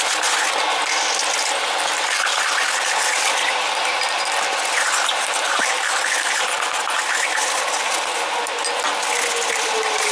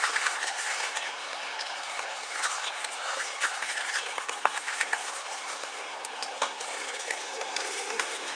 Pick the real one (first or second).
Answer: first